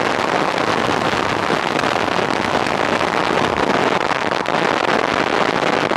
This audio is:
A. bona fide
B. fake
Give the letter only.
A